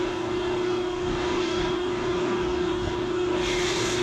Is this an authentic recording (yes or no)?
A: no